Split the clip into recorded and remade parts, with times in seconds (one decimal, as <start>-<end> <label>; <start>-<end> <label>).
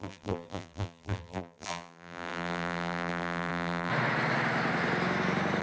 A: 0.0-3.9 remade; 3.9-5.6 recorded